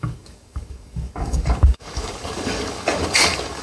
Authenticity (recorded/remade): remade